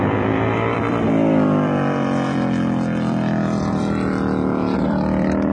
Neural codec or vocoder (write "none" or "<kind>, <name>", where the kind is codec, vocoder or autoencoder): vocoder, BigVGAN v2